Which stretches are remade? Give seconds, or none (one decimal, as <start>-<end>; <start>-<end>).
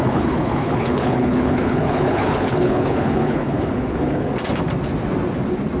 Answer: 0.0-4.3